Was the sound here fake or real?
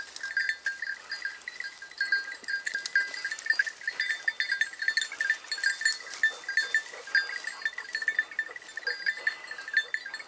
real